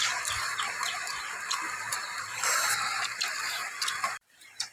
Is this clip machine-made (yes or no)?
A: yes